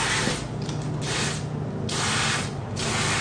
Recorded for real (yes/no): yes